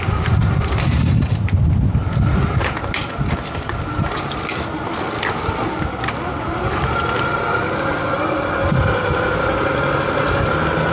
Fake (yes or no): no